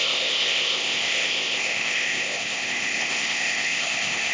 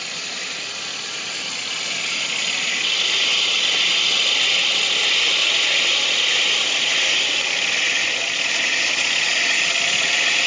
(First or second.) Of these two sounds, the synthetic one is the first